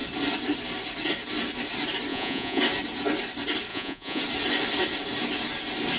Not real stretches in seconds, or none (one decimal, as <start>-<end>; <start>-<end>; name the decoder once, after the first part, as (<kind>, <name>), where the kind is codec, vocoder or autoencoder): 2.1-2.6 (vocoder, Vocos); 3.7-4.2